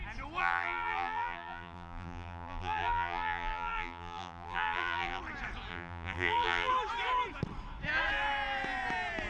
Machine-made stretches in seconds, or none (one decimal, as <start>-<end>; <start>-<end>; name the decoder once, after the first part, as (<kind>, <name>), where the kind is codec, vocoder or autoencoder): 0.4-5.2 (vocoder, BigVGAN v2); 5.7-6.7